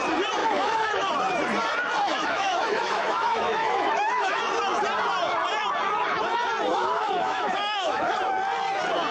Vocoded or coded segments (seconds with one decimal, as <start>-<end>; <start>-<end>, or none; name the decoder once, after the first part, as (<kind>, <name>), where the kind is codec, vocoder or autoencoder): 0.4-1.1 (autoencoder, DAC-VAE); 2.1-4.4; 6.7-8.1